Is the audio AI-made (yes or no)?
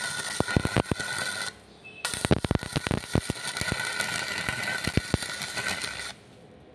no